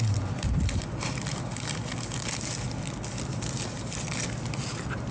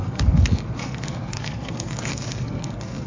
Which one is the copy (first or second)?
second